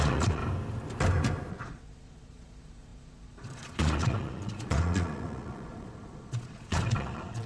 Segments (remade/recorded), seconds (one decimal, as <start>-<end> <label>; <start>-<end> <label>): 0.0-0.4 remade; 0.4-1.5 recorded; 1.5-7.5 remade